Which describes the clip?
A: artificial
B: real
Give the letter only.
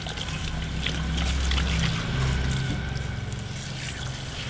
B